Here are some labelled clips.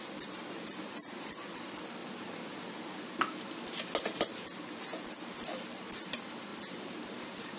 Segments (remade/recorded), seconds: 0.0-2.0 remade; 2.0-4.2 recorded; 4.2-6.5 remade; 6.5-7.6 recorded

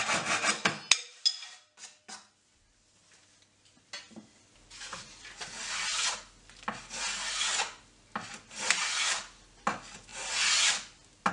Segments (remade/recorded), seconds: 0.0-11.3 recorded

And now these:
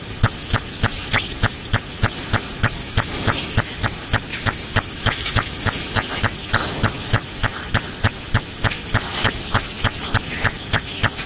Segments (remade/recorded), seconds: 0.0-2.8 recorded; 2.8-3.6 remade; 3.6-4.3 recorded; 4.3-6.2 remade; 6.2-11.3 recorded

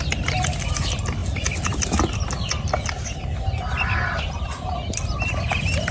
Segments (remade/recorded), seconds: 0.0-5.9 recorded

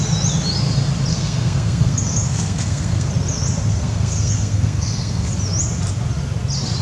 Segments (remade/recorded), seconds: 0.0-1.1 recorded; 1.1-3.1 remade; 3.1-3.7 recorded; 3.7-5.3 remade; 5.3-6.8 recorded

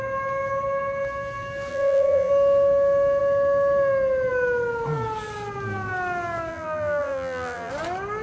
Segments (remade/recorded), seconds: 0.0-1.7 recorded; 1.7-2.3 remade; 2.3-6.5 recorded; 6.5-7.7 remade; 7.7-8.2 recorded

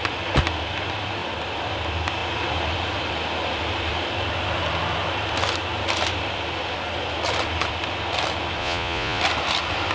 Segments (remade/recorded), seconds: 0.0-8.6 recorded; 8.6-9.2 remade; 9.2-9.9 recorded

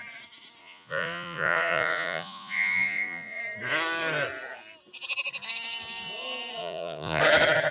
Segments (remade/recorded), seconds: 0.0-0.6 recorded; 0.6-3.4 remade; 3.4-6.6 recorded; 6.6-7.2 remade; 7.2-7.7 recorded